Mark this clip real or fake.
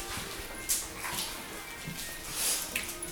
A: real